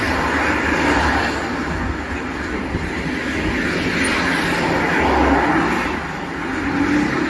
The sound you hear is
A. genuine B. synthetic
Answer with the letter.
A